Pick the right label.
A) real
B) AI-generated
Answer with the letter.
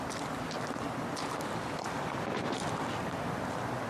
A